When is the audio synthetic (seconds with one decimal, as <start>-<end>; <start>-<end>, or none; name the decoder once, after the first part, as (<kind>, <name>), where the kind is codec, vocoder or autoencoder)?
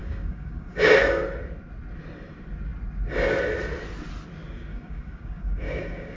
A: 0.0-1.2 (codec, DAC); 4.7-6.2